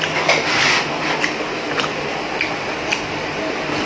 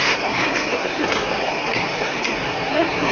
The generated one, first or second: second